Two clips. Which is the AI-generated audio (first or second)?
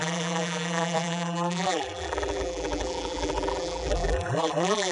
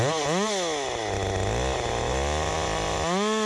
first